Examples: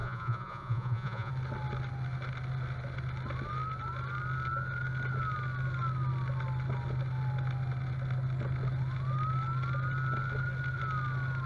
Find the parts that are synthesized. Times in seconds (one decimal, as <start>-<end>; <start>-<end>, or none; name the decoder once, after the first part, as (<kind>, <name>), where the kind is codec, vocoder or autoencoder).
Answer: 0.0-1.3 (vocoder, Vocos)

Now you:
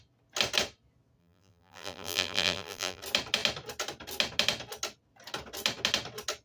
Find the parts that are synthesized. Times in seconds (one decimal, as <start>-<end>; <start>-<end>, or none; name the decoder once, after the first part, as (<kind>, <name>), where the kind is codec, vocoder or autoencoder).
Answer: 1.2-3.0 (vocoder, BigVGAN v2)

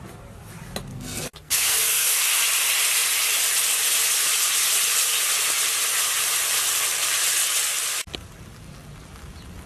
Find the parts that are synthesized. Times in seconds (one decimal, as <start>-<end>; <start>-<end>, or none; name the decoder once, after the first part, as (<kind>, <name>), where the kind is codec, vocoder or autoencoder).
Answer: 0.9-2.3 (codec, SNAC)